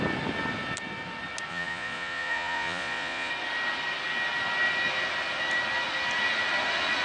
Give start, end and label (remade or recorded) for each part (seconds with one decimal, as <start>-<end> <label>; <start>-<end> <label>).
0.0-1.5 recorded; 1.5-3.3 remade; 3.3-7.0 recorded